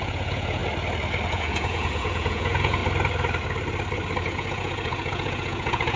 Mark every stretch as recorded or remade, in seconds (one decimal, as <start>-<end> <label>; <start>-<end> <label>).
0.0-0.6 remade; 0.6-1.3 recorded; 1.3-2.8 remade; 2.8-4.2 recorded; 4.2-6.0 remade